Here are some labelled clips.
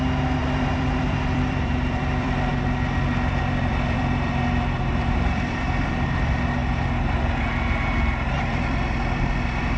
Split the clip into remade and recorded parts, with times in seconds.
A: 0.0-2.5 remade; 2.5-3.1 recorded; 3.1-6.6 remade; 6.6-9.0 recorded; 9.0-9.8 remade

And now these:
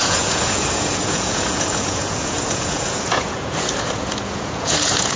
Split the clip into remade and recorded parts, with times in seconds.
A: 0.0-5.2 remade

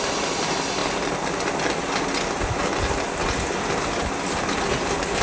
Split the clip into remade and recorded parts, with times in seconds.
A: 0.0-5.2 recorded

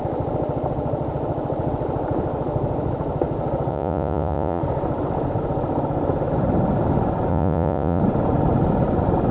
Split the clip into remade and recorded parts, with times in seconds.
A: 0.0-3.7 recorded; 3.7-4.6 remade; 4.6-7.3 recorded; 7.3-8.0 remade; 8.0-9.3 recorded

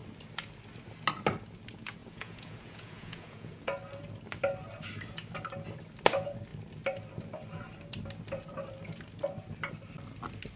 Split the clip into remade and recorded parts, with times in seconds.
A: 0.0-2.0 recorded; 2.0-3.8 remade; 3.8-10.6 recorded

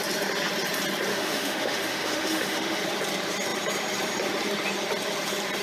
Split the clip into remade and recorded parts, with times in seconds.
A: 0.0-1.1 recorded; 1.1-2.8 remade; 2.8-5.6 recorded

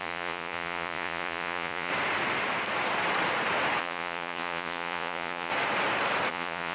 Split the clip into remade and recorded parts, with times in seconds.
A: 0.0-1.9 remade; 1.9-3.8 recorded; 3.8-5.5 remade; 5.5-6.3 recorded; 6.3-6.7 remade